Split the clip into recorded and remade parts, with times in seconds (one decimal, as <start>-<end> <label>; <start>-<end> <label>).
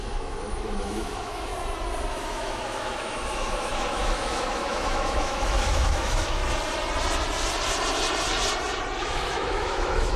0.0-1.5 remade; 1.5-2.1 recorded; 2.1-6.4 remade; 6.4-9.0 recorded; 9.0-10.2 remade